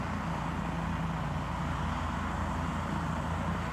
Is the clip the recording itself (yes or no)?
yes